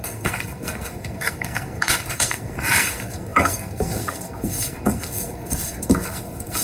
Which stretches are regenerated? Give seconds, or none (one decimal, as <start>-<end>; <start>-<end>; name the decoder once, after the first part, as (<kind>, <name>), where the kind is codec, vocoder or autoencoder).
0.0-6.6 (codec, SNAC)